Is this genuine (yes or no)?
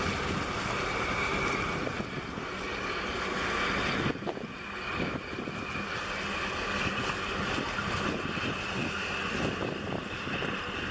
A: yes